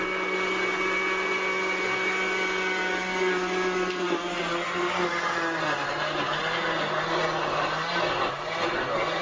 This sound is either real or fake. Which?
real